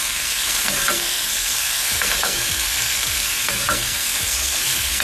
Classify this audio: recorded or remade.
remade